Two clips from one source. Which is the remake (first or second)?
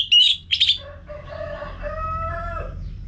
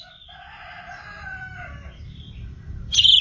second